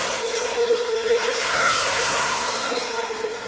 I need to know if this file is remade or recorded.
remade